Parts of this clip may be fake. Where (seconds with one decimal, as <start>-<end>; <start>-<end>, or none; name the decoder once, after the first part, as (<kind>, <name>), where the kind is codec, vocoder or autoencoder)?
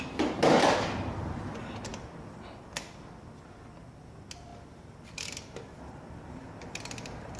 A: none